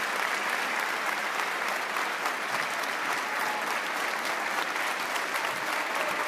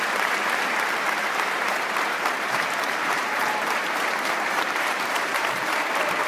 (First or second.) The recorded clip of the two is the first